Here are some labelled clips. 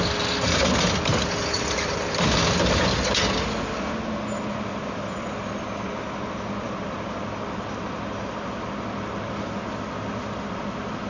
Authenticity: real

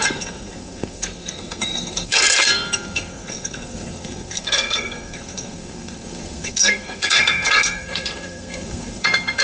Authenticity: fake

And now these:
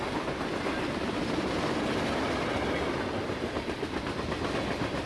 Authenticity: real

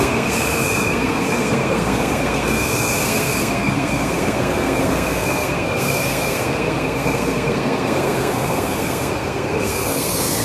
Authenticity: fake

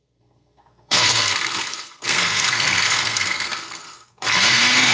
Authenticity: fake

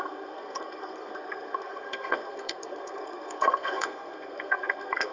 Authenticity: fake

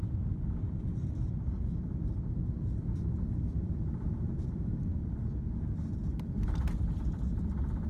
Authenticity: real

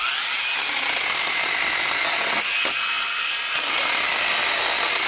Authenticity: real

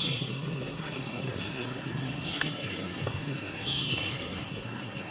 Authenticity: fake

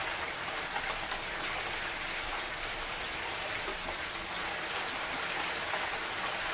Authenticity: real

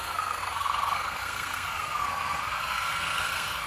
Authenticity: fake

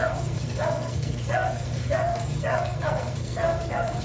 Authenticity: fake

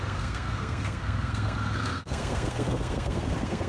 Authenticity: fake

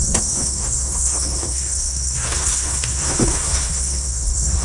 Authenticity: fake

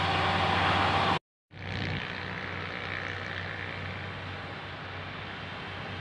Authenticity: real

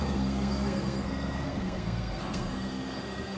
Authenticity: fake